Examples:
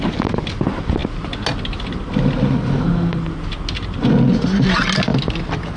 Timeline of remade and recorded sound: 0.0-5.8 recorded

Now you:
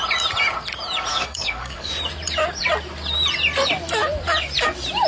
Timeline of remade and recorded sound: 0.0-1.1 recorded; 1.1-1.9 remade; 1.9-5.1 recorded

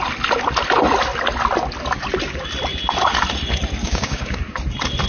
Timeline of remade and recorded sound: 0.0-3.8 recorded; 3.8-4.6 remade; 4.6-5.1 recorded

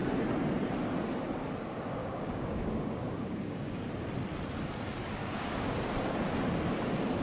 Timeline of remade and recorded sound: 0.0-2.0 recorded; 2.0-3.9 remade; 3.9-5.2 recorded; 5.2-5.8 remade; 5.8-7.2 recorded

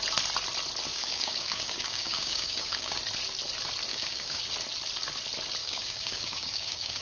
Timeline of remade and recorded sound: 0.0-0.9 recorded; 0.9-3.0 remade; 3.0-3.9 recorded; 3.9-4.4 remade; 4.4-5.6 recorded; 5.6-7.0 remade

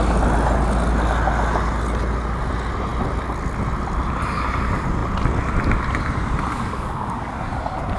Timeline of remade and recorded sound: 0.0-6.5 recorded; 6.5-7.6 remade; 7.6-8.0 recorded